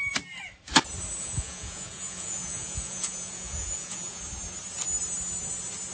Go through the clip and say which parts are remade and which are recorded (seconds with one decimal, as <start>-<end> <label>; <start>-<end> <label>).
0.0-1.2 recorded; 1.2-4.2 remade; 4.2-5.9 recorded